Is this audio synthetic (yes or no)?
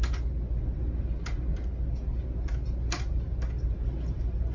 no